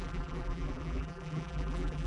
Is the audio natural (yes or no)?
no